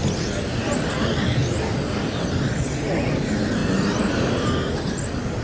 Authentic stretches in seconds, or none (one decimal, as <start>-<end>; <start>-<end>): 0.0-5.4